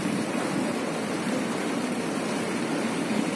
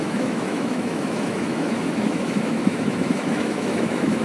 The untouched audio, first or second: first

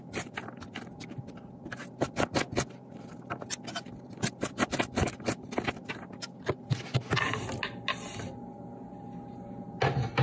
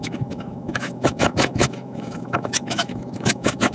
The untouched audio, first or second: first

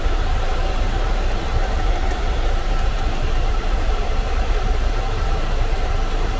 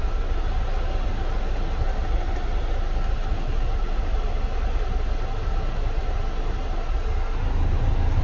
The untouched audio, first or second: second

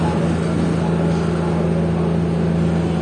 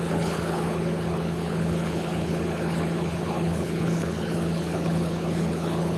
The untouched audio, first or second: first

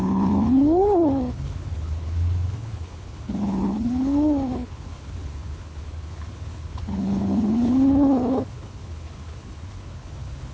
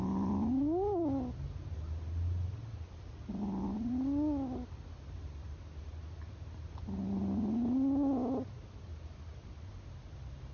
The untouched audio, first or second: second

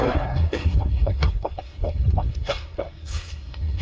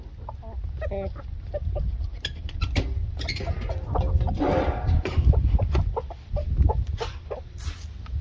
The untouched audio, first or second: second